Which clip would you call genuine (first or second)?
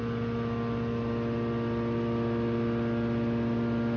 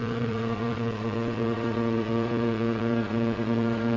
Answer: first